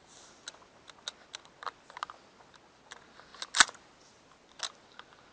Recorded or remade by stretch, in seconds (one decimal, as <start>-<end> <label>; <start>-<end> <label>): 0.0-5.3 recorded